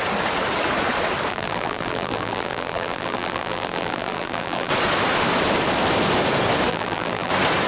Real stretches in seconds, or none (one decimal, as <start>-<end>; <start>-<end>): 0.0-1.3; 4.7-6.7; 7.3-7.7